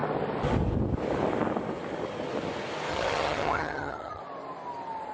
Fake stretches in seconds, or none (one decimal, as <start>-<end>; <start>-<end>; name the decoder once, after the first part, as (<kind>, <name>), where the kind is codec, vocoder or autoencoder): 2.9-4.2 (vocoder, HiFi-GAN)